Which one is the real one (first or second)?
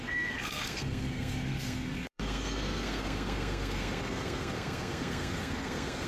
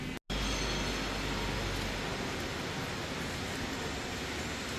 second